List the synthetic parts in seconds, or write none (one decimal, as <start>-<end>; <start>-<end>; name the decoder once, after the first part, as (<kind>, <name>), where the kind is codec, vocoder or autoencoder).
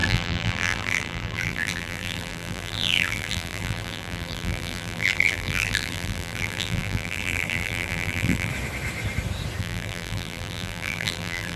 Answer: 0.0-8.5 (vocoder, BigVGAN v2); 9.6-11.6